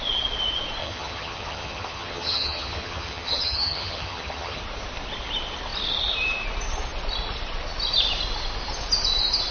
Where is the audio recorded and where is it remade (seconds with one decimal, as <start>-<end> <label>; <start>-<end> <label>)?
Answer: 0.0-0.8 recorded; 0.8-4.6 remade; 4.6-9.5 recorded